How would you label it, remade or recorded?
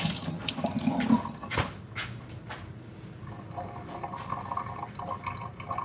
recorded